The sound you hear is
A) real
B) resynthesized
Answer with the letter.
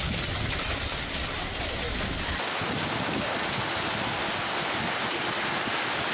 A